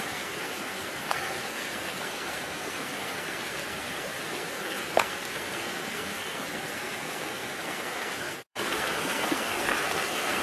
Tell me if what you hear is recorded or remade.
remade